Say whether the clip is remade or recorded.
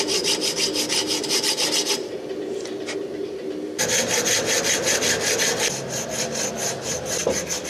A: recorded